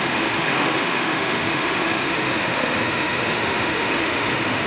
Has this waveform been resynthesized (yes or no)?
yes